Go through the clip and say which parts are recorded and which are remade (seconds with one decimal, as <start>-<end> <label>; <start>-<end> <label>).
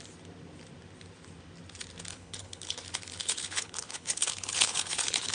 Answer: 0.0-2.1 recorded; 2.1-5.3 remade